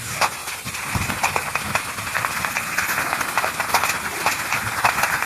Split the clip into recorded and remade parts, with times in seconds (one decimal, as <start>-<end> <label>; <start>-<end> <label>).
0.0-5.3 recorded